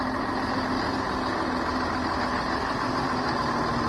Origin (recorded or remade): recorded